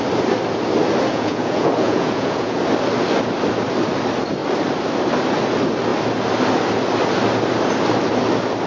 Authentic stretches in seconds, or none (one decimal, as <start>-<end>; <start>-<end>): 0.0-1.1; 2.6-8.7